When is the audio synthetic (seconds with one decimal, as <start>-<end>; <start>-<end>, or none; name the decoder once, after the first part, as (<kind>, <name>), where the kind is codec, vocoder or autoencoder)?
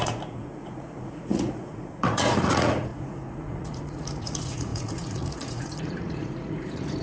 0.0-7.0 (vocoder, Vocos)